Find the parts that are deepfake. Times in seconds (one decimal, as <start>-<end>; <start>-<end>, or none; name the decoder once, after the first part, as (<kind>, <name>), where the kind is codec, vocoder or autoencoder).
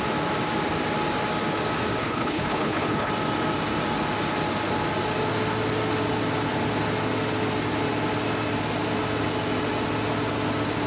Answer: 2.0-3.1 (codec, HILCodec)